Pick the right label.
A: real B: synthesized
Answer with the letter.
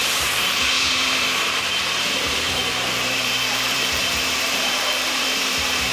B